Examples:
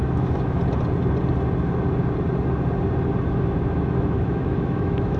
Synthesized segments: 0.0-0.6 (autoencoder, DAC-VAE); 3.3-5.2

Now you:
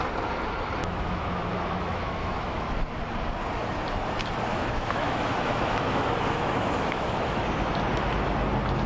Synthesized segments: 0.8-2.7 (autoencoder, DAC-VAE); 4.5-7.4